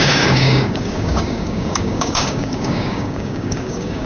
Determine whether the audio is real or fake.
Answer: fake